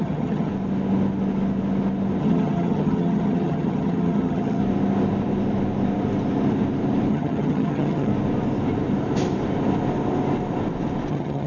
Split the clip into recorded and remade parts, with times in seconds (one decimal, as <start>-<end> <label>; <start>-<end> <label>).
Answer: 0.0-0.5 remade; 0.5-2.2 recorded; 2.2-4.6 remade; 4.6-7.1 recorded; 7.1-8.1 remade; 8.1-11.1 recorded; 11.1-11.5 remade